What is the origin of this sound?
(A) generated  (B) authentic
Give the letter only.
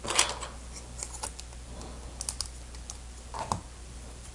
B